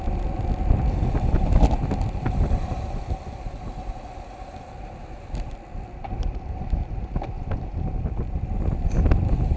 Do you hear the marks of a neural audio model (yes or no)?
no